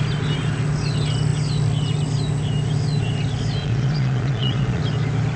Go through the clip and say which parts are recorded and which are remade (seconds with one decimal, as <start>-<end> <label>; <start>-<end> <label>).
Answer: 0.0-3.6 recorded; 3.6-4.8 remade; 4.8-5.4 recorded